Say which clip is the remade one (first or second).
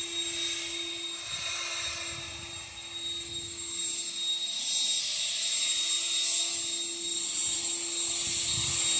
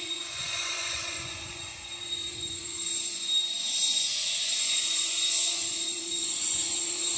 second